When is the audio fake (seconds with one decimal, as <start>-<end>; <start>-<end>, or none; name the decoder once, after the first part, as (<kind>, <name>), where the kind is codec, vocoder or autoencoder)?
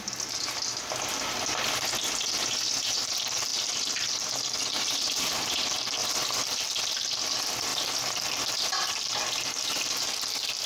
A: 3.5-5.3 (vocoder, BigVGAN v2); 6.0-6.6; 7.7-8.5